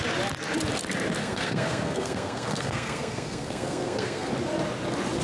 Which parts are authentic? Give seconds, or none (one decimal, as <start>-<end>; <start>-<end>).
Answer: 0.0-1.2; 4.3-5.2